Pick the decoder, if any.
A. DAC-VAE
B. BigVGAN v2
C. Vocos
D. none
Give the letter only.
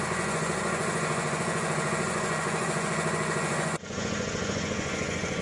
C